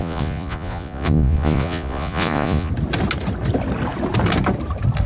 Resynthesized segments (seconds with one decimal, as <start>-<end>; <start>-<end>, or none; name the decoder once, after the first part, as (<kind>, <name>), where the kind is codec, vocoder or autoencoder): 0.0-2.7 (vocoder, Vocos)